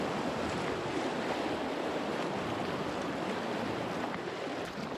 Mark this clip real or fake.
real